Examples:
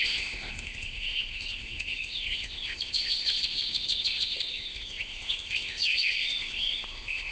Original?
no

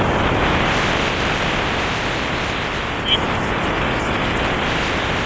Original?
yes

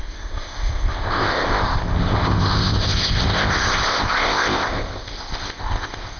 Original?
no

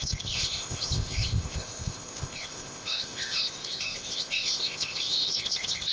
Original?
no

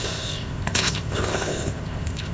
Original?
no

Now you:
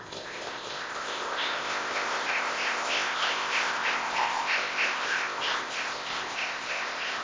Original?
no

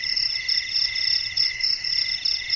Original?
yes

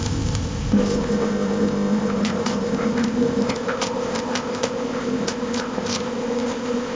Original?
no